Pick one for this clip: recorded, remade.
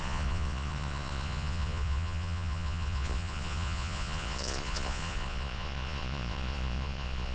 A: remade